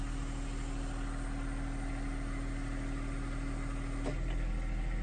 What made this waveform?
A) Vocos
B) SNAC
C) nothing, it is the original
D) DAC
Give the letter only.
C